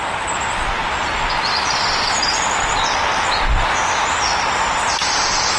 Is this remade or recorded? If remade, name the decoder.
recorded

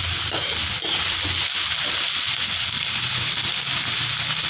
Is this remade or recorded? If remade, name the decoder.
recorded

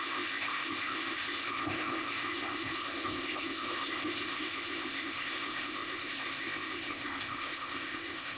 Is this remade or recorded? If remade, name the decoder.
remade, codec, ZipCodec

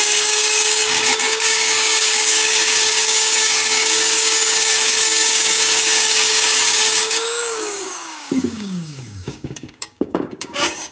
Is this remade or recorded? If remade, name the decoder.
remade, codec, DAC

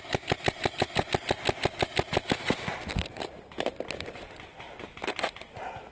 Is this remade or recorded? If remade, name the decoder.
recorded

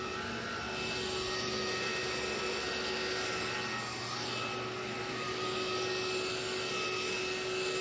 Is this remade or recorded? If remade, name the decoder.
recorded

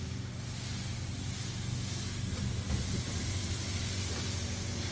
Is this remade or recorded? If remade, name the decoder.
recorded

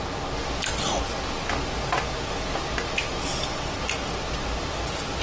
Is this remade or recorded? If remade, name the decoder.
recorded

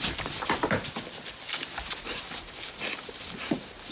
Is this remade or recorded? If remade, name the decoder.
recorded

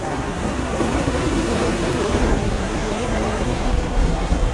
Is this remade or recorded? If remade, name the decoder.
remade, codec, SNAC